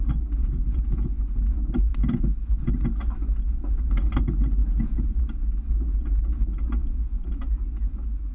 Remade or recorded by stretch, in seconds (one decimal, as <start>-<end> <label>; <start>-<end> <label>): 0.0-0.4 recorded; 0.4-1.1 remade; 1.1-4.6 recorded; 4.6-5.2 remade; 5.2-6.8 recorded; 6.8-7.3 remade; 7.3-8.3 recorded